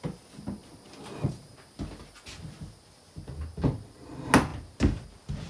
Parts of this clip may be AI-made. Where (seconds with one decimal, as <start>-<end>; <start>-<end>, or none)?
none